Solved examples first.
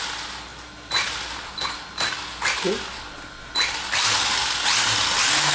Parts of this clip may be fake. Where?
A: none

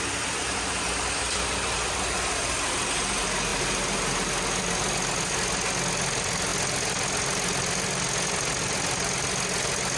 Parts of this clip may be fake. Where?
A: none

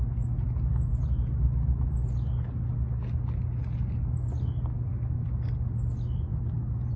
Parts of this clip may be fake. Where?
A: none

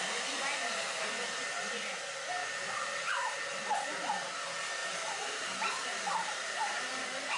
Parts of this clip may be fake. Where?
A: 2.4-4.3 (vocoder, BigVGAN v2); 4.8-6.8